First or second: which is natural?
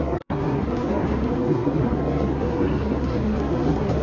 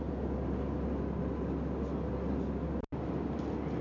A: second